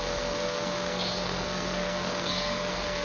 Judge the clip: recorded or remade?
remade